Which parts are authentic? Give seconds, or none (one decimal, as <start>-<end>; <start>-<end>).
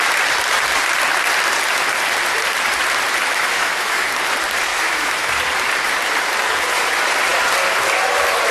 0.0-3.3; 4.1-4.7; 5.3-8.5